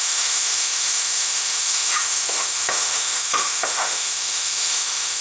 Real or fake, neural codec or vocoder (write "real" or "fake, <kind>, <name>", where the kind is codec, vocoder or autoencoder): fake, autoencoder, DAC-VAE